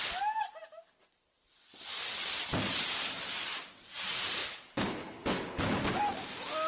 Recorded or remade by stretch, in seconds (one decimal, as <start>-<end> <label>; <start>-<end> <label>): 0.0-4.4 recorded; 4.4-5.8 remade; 5.8-6.7 recorded